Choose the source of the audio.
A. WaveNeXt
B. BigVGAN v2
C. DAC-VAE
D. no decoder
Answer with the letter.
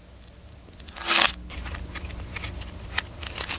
D